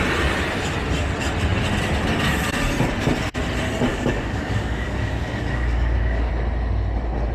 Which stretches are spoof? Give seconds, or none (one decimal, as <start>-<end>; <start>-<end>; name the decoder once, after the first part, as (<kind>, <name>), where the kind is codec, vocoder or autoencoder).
3.9-6.3 (codec, DAC)